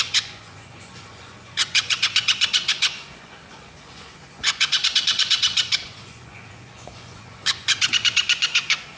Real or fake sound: fake